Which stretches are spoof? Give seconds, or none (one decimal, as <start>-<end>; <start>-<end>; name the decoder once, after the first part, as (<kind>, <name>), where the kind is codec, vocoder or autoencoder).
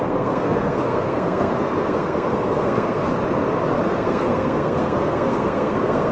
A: 0.0-3.1 (codec, SNAC); 3.9-6.1